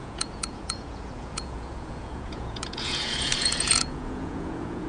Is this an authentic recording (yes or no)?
no